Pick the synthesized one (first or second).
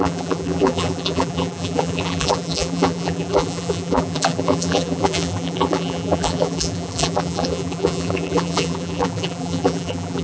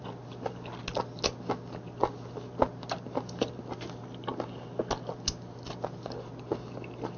first